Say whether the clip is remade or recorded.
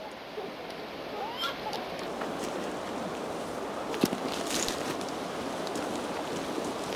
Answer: recorded